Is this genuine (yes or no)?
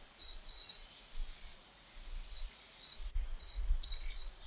no